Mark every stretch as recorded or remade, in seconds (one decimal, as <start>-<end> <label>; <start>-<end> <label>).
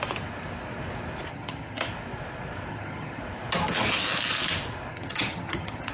0.0-1.3 recorded; 1.3-1.9 remade; 1.9-2.7 recorded; 2.7-3.2 remade; 3.2-4.9 recorded; 4.9-5.9 remade